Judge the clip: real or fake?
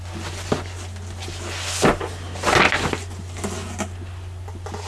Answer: real